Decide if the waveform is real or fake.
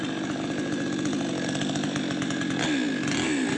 real